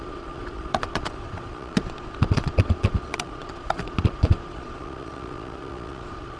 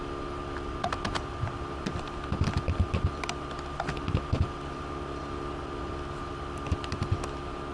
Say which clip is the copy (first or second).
first